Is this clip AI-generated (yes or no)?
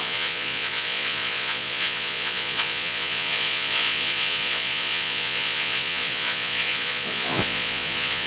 yes